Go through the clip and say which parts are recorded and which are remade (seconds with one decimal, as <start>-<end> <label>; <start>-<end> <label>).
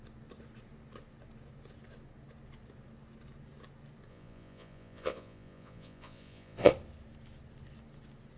0.0-4.1 recorded; 4.1-6.7 remade; 6.7-8.4 recorded